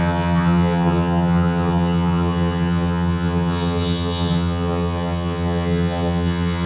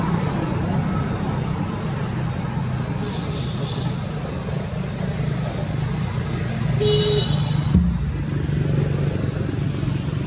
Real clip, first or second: second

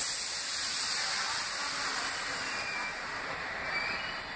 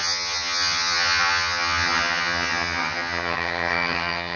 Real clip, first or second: first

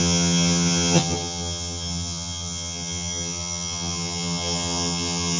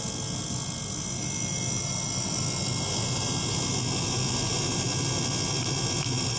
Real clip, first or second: second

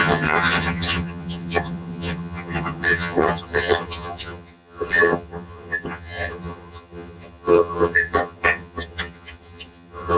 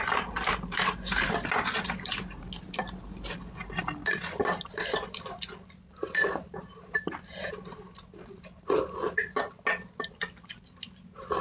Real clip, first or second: second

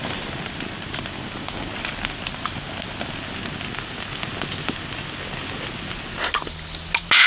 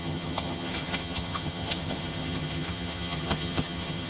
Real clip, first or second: first